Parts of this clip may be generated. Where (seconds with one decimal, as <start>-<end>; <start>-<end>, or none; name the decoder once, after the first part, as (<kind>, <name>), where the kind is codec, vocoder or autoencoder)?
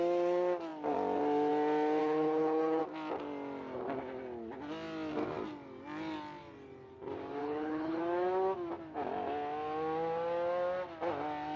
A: 2.0-2.8 (codec, HILCodec); 7.4-8.0